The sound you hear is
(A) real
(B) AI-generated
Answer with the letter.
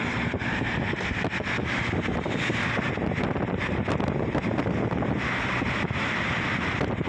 A